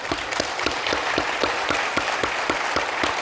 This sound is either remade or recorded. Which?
remade